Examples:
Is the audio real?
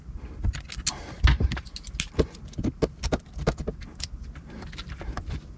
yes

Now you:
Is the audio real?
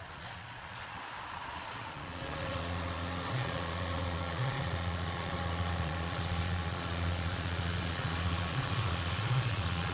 no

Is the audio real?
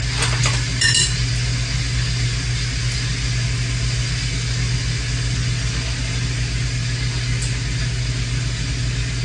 yes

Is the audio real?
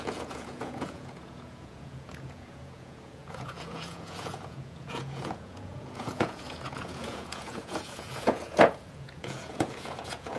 no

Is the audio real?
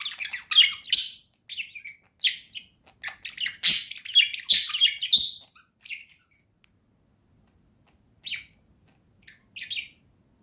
yes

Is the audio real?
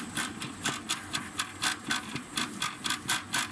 yes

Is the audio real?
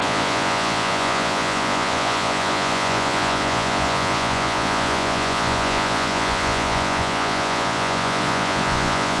no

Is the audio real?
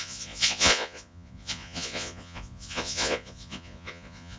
no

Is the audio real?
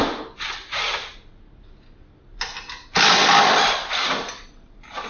yes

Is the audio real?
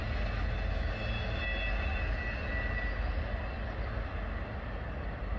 yes